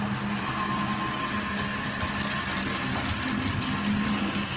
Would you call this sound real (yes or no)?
yes